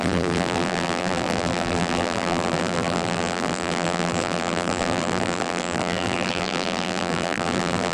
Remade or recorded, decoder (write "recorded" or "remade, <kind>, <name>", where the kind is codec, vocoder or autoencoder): remade, vocoder, BigVGAN v2